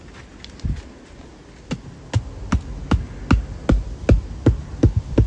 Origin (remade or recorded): recorded